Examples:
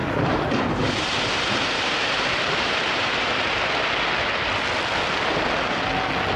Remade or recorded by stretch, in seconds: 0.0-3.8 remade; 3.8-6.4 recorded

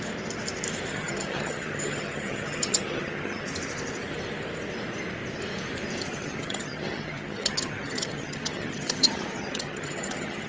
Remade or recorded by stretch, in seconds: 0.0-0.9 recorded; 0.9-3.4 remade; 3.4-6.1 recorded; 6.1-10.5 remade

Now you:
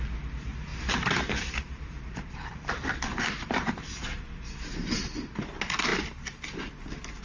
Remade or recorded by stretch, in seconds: 0.0-0.7 recorded; 0.7-4.9 remade; 4.9-7.2 recorded